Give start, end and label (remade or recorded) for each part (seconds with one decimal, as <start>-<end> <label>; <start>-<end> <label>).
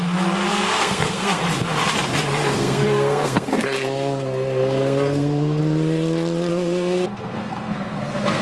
0.0-0.5 recorded; 0.5-1.4 remade; 1.4-2.4 recorded; 2.4-5.6 remade; 5.6-6.5 recorded; 6.5-8.4 remade